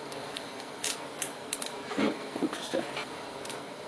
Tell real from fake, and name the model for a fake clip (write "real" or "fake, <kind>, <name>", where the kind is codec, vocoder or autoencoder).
fake, codec, SNAC